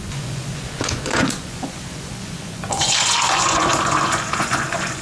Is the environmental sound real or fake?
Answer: fake